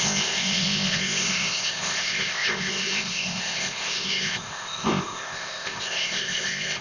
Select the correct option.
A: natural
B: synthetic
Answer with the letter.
B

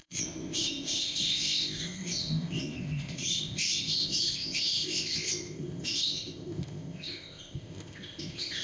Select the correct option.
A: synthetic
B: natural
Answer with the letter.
A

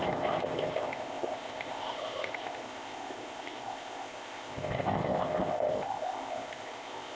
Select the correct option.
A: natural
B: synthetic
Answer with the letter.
B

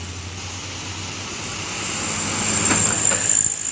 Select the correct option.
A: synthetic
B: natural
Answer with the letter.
B